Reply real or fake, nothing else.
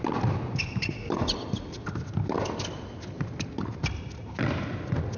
real